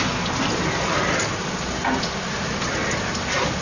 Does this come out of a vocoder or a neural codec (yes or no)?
no